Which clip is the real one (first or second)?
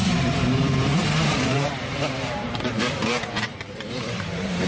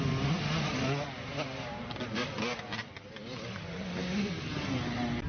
second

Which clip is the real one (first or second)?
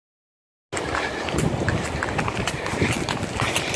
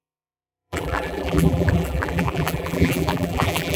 first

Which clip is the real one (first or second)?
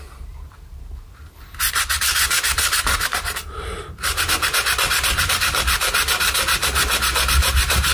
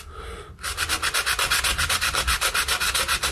second